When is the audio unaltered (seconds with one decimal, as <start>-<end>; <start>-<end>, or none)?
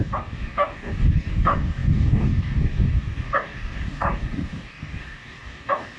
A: none